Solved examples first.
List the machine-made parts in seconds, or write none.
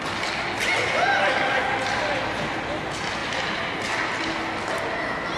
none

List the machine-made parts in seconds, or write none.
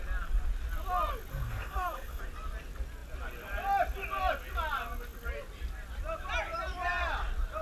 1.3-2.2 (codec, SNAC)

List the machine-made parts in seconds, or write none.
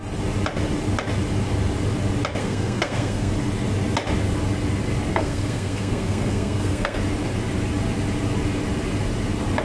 2.4-3.3 (codec, SNAC); 5.1-7.0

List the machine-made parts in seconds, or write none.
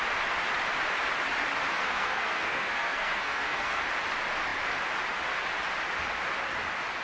1.7-3.8 (codec, SNAC)